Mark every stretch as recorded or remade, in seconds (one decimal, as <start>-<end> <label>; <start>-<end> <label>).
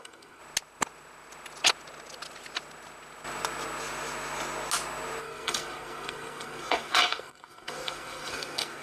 0.0-0.4 remade; 0.4-5.2 recorded; 5.2-8.8 remade